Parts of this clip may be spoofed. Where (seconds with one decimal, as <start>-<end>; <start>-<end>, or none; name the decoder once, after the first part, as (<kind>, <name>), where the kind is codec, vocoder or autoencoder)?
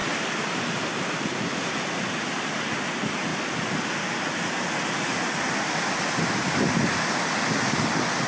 none